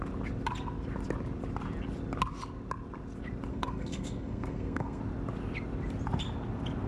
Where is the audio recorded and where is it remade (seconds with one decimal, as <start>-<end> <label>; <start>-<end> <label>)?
0.0-3.5 recorded; 3.5-5.0 remade; 5.0-6.9 recorded